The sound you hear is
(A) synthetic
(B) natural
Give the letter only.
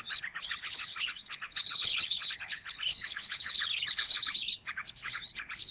A